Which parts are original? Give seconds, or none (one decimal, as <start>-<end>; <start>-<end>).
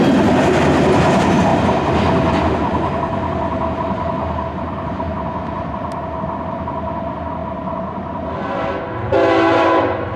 0.0-10.2